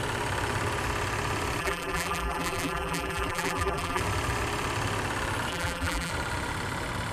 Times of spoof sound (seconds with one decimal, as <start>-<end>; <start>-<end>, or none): 1.6-4.0; 5.5-6.1